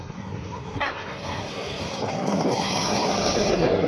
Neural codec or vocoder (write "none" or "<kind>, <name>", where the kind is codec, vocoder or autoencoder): codec, SNAC